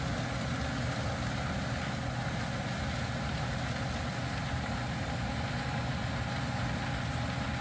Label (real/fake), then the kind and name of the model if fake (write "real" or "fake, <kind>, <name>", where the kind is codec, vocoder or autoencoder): real